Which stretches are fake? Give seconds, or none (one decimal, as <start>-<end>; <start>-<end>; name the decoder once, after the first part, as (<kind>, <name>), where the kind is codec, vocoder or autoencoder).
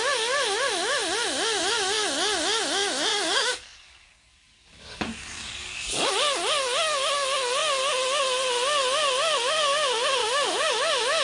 3.1-6.1 (codec, DAC); 10.2-10.7